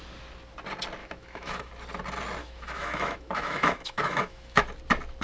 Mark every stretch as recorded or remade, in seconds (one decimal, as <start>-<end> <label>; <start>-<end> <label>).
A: 0.0-1.0 recorded; 1.0-1.7 remade; 1.7-2.4 recorded; 2.4-4.6 remade; 4.6-5.2 recorded